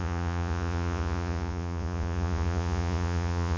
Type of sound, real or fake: fake